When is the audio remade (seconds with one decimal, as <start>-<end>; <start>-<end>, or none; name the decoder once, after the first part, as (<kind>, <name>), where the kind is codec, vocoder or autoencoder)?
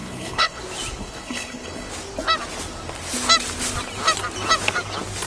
0.0-0.6 (codec, HILCodec); 1.0-1.9